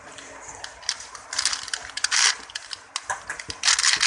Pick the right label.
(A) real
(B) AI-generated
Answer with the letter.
A